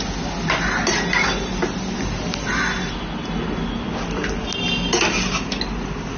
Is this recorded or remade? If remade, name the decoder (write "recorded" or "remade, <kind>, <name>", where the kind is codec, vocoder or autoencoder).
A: recorded